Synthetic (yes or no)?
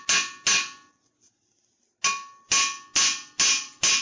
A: no